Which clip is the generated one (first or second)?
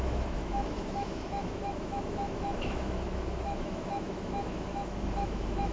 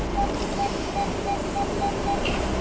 first